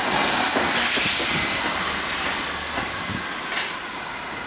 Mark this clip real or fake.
real